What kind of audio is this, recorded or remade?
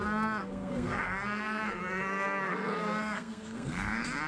remade